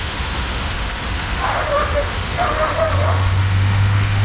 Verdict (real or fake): fake